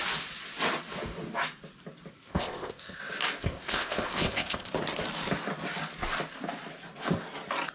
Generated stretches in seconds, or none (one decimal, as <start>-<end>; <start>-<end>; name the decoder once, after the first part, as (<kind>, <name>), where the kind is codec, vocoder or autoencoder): 2.1-3.0 (codec, ZipCodec); 3.4-4.7